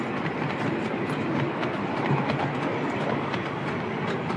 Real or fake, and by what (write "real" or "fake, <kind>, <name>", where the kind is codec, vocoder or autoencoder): real